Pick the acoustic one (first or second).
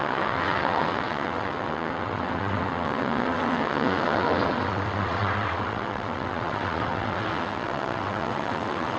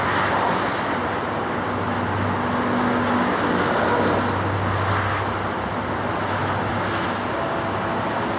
second